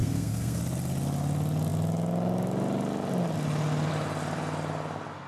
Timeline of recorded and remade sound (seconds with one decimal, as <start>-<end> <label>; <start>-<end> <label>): 0.0-0.6 remade; 0.6-5.3 recorded